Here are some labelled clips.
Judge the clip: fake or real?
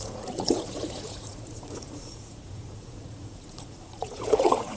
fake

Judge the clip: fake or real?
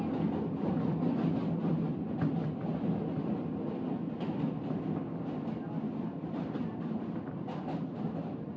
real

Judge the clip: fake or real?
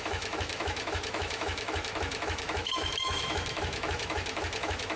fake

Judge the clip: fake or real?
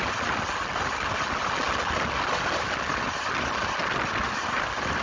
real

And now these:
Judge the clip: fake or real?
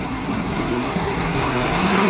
fake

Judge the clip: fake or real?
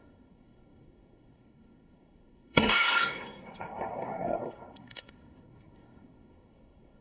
fake